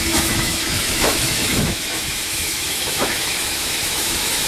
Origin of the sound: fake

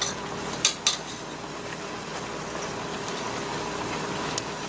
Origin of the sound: real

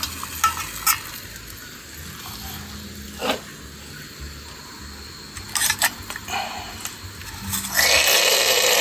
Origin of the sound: real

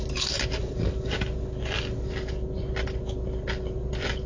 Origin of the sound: real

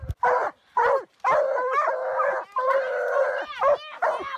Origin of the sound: real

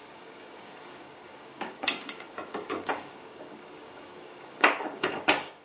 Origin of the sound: fake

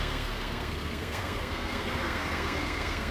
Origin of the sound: fake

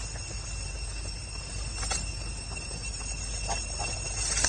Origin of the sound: fake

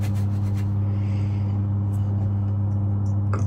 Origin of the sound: real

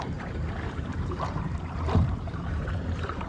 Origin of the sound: fake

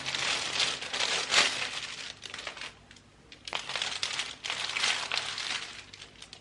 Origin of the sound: real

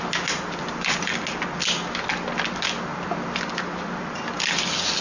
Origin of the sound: real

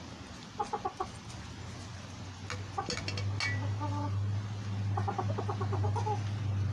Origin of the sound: real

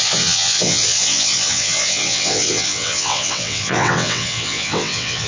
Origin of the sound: fake